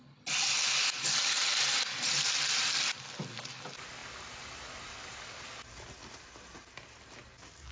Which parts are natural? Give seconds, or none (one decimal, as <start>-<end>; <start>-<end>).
0.0-7.7